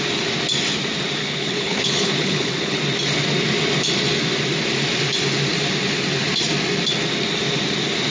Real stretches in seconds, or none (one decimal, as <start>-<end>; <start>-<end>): 0.0-1.2; 2.8-8.1